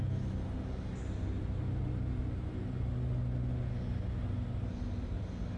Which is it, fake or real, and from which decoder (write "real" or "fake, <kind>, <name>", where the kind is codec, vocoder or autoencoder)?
real